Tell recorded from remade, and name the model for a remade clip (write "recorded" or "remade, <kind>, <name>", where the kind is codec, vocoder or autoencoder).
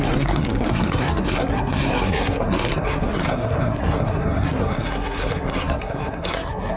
remade, codec, SNAC